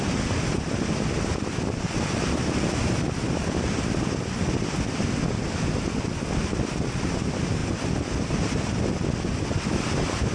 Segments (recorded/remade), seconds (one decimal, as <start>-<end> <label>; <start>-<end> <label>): 0.0-10.3 recorded